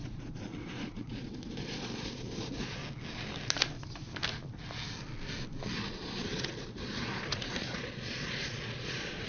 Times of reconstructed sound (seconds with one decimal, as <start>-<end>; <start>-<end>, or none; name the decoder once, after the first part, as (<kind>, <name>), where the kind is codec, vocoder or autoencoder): 0.0-2.8 (vocoder, Vocos); 5.7-9.3